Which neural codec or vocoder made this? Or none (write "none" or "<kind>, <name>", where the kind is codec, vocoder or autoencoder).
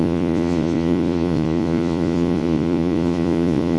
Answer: vocoder, Vocos